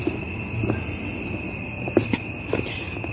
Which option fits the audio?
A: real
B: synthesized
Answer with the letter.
A